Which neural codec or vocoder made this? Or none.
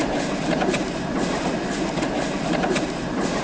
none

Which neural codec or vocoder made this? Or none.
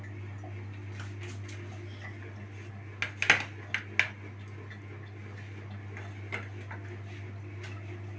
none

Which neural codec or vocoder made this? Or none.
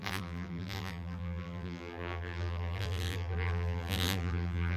vocoder, BigVGAN v2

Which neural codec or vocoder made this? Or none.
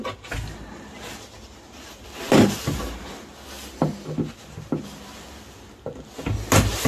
none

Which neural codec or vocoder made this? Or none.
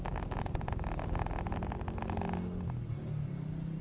none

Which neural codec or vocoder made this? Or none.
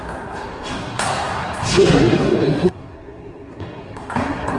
codec, SNAC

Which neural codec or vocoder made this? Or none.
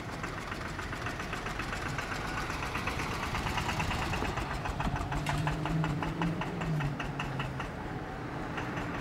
vocoder, BigVGAN v2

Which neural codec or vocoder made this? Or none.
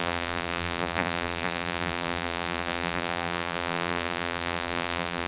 vocoder, BigVGAN v2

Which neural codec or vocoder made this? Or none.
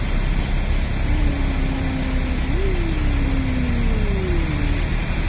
none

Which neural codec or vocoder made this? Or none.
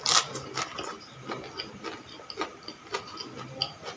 none